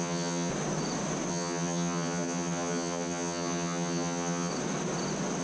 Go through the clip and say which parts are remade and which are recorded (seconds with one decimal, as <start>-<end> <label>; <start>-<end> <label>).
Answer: 0.0-0.5 remade; 0.5-1.3 recorded; 1.3-4.5 remade; 4.5-5.4 recorded

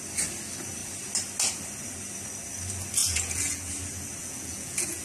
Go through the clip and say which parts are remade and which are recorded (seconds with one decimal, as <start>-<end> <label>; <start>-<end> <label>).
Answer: 0.0-3.0 recorded; 3.0-3.7 remade; 3.7-4.2 recorded; 4.2-5.0 remade

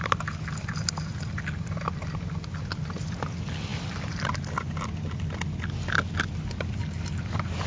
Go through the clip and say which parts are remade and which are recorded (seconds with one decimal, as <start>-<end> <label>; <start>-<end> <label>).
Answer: 0.0-7.7 recorded

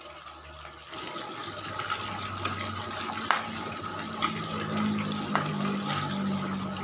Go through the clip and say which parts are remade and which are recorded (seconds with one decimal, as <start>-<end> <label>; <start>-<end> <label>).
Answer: 0.0-6.8 recorded

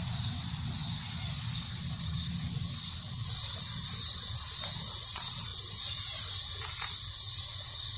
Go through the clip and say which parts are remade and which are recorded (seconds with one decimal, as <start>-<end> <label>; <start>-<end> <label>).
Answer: 0.0-8.0 recorded

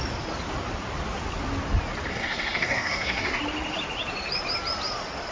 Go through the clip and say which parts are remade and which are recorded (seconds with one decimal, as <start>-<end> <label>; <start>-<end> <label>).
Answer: 0.0-2.1 recorded; 2.1-3.4 remade; 3.4-5.3 recorded